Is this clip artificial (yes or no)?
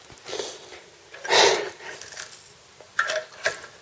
no